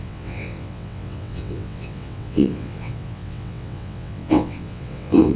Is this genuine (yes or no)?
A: no